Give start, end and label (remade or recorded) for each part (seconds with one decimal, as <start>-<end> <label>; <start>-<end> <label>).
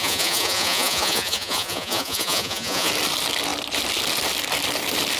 0.0-2.9 remade; 2.9-5.2 recorded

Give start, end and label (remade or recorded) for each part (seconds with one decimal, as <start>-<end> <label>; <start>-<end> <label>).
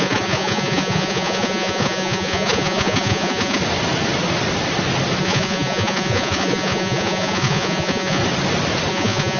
0.0-3.6 remade; 3.6-5.2 recorded; 5.2-8.2 remade; 8.2-8.9 recorded; 8.9-9.4 remade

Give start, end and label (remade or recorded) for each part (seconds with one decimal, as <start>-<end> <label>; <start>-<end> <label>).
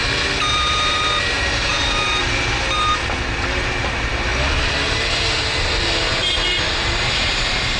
0.0-0.5 recorded; 0.5-4.3 remade; 4.3-5.1 recorded; 5.1-7.8 remade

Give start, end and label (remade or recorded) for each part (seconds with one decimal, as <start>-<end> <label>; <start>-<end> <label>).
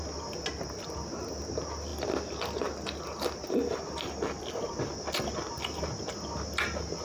0.0-7.0 recorded